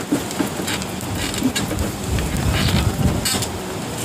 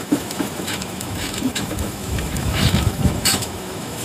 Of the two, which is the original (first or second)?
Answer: first